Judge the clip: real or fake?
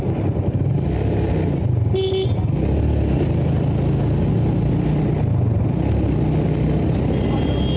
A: real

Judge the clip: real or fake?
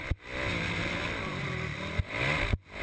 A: real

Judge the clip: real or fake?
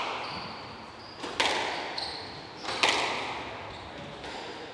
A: real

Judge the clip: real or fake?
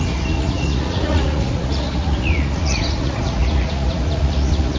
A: fake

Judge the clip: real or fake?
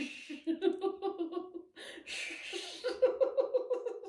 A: real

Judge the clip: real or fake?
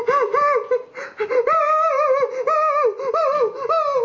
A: real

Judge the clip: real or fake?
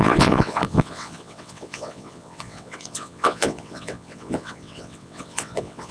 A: fake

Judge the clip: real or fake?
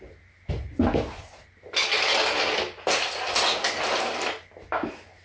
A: real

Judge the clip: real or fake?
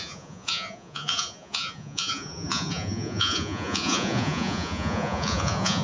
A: fake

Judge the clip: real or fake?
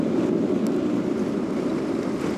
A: real